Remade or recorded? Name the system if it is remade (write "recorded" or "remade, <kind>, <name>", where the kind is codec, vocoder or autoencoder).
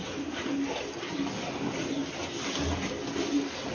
recorded